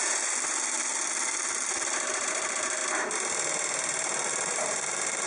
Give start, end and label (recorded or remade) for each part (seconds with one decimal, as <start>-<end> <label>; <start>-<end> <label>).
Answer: 0.0-2.1 recorded; 2.1-2.8 remade; 2.8-4.3 recorded; 4.3-5.3 remade